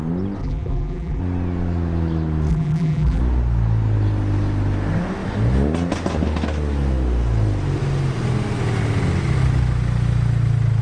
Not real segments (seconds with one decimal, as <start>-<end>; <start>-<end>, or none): 0.4-1.2; 2.5-3.2